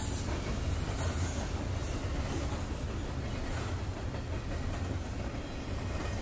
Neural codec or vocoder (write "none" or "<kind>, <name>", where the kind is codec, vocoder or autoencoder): none